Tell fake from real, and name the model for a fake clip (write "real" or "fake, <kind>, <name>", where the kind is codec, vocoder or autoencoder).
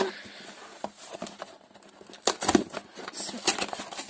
real